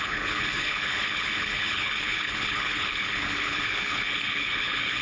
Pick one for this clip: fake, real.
fake